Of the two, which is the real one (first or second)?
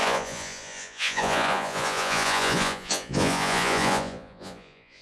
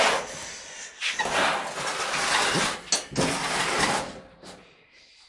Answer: second